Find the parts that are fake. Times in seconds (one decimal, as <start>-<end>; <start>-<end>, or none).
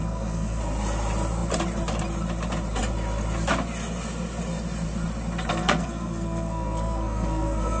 0.0-0.6; 5.5-7.8